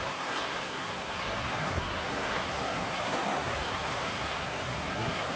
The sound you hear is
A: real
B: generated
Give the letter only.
B